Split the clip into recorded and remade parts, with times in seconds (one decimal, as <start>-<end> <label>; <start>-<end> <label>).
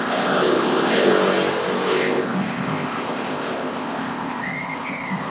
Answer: 0.0-1.1 remade; 1.1-1.9 recorded; 1.9-5.3 remade